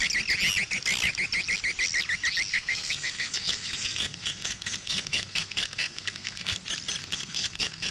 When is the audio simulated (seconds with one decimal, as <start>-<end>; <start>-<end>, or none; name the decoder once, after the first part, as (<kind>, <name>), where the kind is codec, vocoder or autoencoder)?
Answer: 2.5-6.6 (codec, SNAC); 7.0-7.9